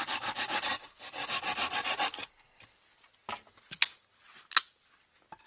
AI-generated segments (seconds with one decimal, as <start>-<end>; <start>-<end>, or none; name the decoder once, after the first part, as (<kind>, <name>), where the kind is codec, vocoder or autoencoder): none